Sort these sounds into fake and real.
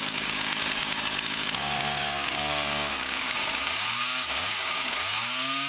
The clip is fake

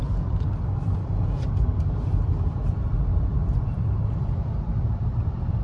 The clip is fake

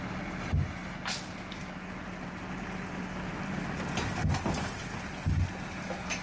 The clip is real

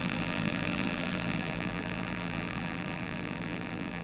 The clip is fake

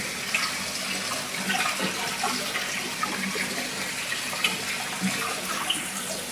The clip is real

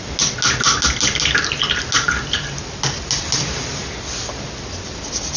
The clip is real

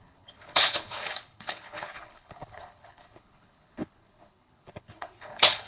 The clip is fake